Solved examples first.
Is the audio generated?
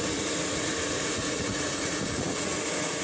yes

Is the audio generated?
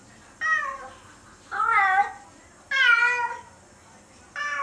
no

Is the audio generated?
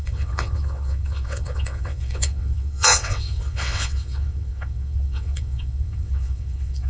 yes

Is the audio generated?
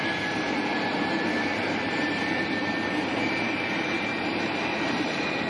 yes